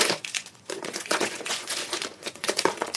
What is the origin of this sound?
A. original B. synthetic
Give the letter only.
B